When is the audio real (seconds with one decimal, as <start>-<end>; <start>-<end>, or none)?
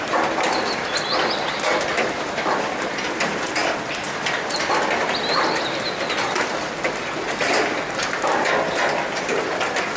0.0-10.0